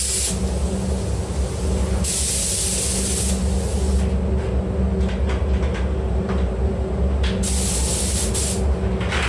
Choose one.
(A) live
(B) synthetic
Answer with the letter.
A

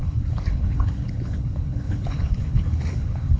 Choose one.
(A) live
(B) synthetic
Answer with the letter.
B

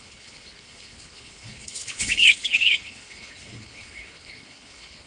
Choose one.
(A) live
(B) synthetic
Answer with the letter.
B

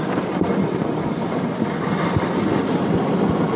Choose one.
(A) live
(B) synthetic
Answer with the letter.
A